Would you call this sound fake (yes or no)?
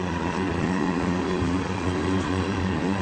yes